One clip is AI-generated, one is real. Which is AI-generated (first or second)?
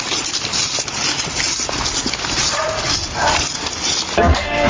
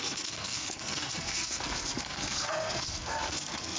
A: second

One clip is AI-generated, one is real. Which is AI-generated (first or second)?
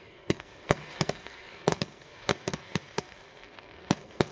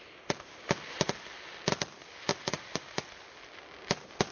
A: first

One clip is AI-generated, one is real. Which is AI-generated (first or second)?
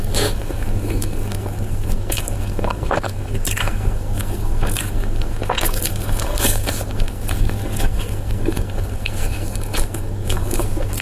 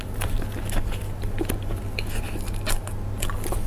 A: first